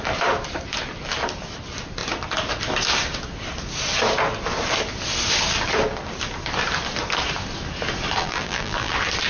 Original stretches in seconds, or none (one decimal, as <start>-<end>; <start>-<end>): 0.0-8.2; 8.9-9.3

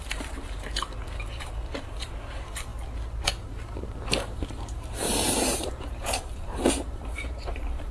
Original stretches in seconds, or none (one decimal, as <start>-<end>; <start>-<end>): 2.7-3.3

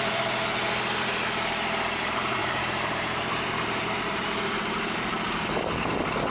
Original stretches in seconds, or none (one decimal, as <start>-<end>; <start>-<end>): 0.0-2.4; 4.5-6.3

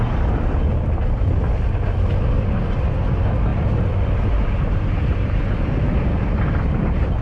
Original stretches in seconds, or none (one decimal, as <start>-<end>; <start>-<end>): 0.0-3.5; 4.3-7.2

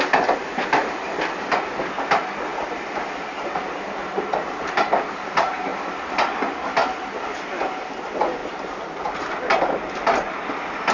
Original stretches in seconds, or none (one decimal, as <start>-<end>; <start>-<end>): 0.0-5.7; 6.5-10.9